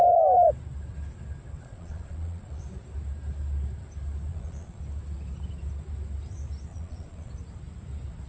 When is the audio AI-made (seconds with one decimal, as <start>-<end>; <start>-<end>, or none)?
1.6-2.6; 4.3-4.8; 6.7-7.3